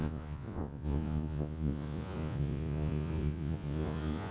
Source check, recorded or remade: remade